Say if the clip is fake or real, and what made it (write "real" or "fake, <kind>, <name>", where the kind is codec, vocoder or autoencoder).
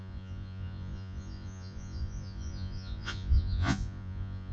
fake, vocoder, Vocos